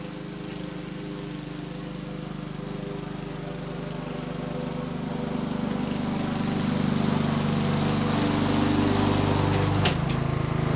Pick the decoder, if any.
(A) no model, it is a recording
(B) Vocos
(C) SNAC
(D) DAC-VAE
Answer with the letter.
A